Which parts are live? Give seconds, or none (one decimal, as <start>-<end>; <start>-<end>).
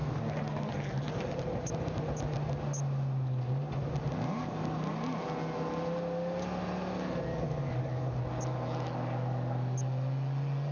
0.0-7.3; 8.2-10.7